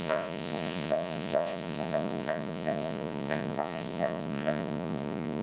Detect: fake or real fake